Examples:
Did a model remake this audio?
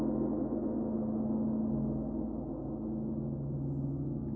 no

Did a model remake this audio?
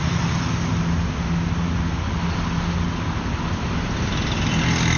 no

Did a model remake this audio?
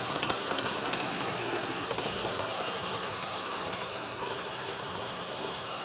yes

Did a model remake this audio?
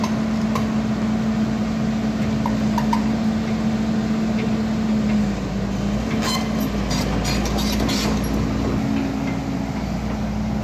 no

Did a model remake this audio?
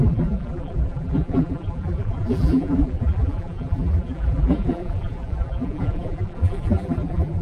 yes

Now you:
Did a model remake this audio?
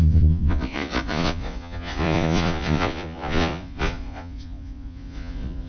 yes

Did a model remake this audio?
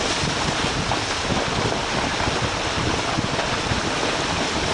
no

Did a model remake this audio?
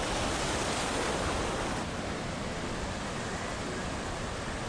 no